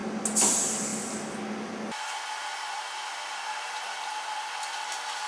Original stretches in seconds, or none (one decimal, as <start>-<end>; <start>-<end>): 0.0-5.3